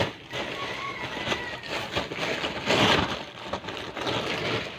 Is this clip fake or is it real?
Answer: real